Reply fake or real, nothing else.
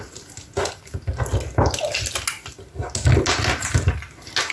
real